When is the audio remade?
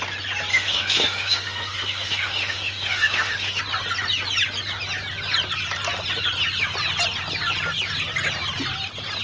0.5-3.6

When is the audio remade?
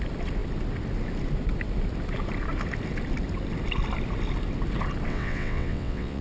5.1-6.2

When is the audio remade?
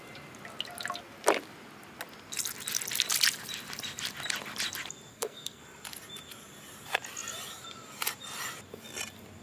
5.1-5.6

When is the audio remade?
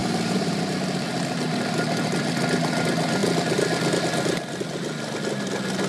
0.0-0.5